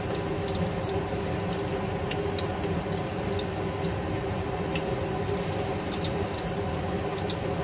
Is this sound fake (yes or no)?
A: no